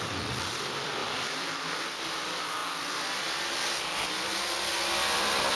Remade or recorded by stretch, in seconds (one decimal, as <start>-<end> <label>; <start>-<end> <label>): 0.0-2.6 remade; 2.6-3.1 recorded; 3.1-5.6 remade

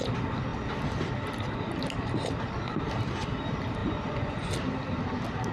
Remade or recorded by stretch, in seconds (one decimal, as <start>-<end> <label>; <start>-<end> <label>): 0.0-3.8 recorded; 3.8-4.5 remade; 4.5-5.5 recorded

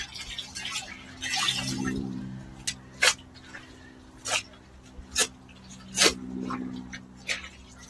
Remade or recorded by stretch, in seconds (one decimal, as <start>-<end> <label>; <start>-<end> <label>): 0.0-1.3 recorded; 1.3-2.2 remade; 2.2-7.9 recorded

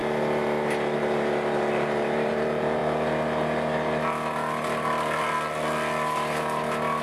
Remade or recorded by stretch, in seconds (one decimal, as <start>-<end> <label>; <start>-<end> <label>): 0.0-1.7 recorded; 1.7-2.8 remade; 2.8-7.0 recorded

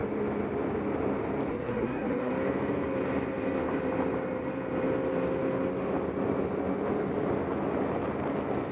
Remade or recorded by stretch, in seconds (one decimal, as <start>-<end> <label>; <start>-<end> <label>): 0.0-1.5 recorded; 1.5-2.3 remade; 2.3-8.7 recorded